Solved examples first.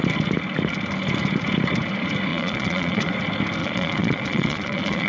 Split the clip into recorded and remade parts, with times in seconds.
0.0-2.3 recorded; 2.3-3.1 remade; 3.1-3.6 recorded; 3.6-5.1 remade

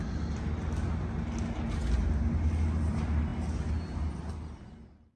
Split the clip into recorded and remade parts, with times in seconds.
0.0-5.2 recorded